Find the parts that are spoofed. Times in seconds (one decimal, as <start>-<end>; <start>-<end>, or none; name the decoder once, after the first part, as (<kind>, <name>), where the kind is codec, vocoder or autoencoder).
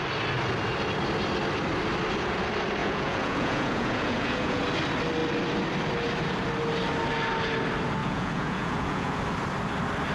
2.8-4.6 (vocoder, Vocos); 8.0-9.2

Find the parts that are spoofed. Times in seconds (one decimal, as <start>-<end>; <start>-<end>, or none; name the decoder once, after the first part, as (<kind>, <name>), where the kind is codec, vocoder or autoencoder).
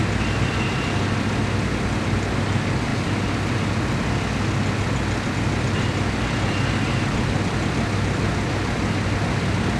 none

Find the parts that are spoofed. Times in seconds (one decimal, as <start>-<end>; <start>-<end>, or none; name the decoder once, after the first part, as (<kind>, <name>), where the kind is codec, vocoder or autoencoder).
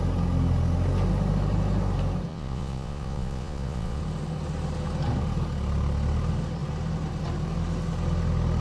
2.3-4.0 (vocoder, Vocos)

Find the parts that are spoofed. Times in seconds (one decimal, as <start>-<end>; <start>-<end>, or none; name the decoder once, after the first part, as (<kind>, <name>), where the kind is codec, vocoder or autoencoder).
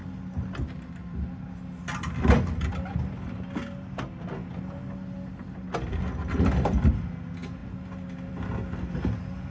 none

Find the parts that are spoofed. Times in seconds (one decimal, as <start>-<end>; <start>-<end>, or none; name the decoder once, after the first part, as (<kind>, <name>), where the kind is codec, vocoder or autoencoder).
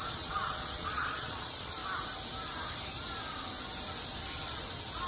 0.0-1.8 (vocoder, Vocos)